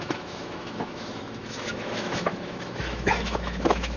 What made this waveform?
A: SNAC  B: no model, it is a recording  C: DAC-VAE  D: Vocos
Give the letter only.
C